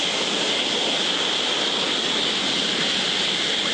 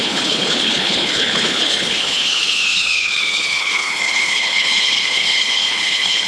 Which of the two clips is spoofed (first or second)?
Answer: second